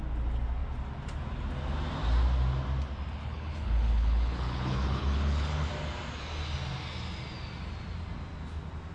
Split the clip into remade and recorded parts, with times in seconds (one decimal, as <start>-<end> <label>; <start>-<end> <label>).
0.0-3.2 recorded; 3.2-5.7 remade; 5.7-8.9 recorded